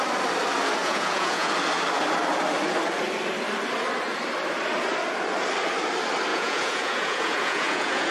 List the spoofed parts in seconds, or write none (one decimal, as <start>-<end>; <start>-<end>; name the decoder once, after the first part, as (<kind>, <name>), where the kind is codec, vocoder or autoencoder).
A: 0.8-1.5 (vocoder, Vocos); 6.3-8.1